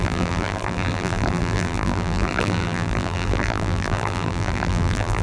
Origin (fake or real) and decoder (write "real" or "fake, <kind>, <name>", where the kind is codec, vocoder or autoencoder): fake, vocoder, BigVGAN v2